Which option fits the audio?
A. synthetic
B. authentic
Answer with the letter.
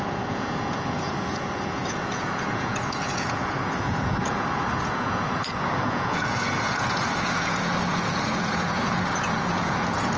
A